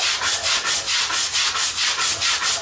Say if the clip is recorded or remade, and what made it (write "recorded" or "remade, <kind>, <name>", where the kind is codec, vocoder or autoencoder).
recorded